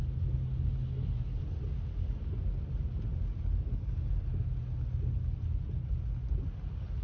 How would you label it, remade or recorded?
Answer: recorded